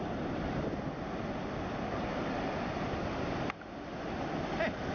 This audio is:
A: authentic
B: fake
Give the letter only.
A